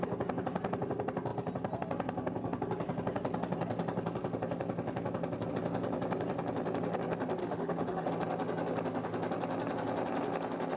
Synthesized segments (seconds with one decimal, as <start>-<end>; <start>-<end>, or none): 7.4-8.1